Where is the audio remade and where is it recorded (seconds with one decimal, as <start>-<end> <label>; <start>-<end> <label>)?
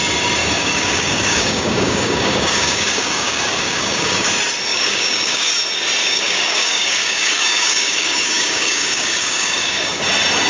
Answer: 0.0-0.4 recorded; 0.4-4.3 remade; 4.3-4.7 recorded; 4.7-5.5 remade; 5.5-6.0 recorded; 6.0-10.0 remade; 10.0-10.5 recorded